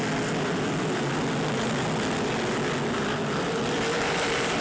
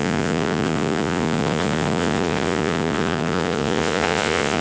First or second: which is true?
first